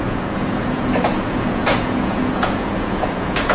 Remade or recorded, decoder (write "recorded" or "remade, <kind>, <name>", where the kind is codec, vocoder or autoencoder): remade, vocoder, Vocos